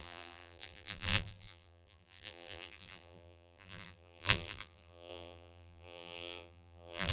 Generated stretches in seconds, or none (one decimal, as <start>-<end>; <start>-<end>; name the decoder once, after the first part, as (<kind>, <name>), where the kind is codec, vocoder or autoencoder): 0.0-7.1 (vocoder, BigVGAN v2)